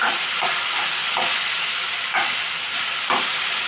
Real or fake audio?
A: fake